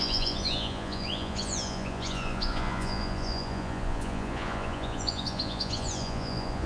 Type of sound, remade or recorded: remade